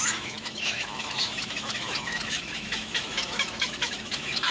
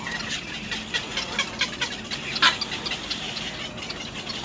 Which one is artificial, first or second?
first